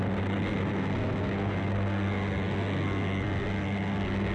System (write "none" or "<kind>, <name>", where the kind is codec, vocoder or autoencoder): codec, SNAC